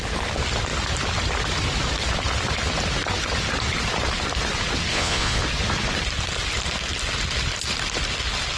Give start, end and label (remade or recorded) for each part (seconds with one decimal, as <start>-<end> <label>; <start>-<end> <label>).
0.0-4.9 recorded; 4.9-5.4 remade; 5.4-8.6 recorded